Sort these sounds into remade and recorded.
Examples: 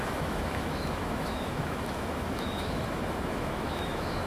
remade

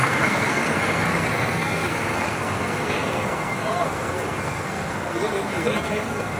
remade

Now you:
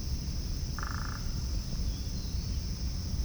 remade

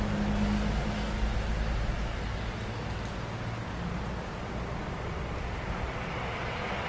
recorded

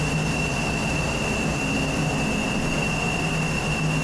recorded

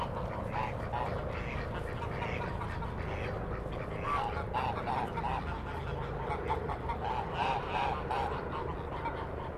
recorded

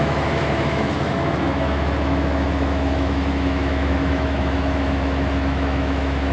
remade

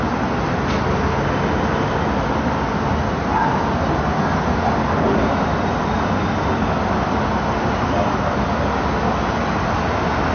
recorded